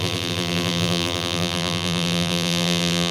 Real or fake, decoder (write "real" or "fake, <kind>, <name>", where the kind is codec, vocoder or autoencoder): fake, vocoder, BigVGAN v2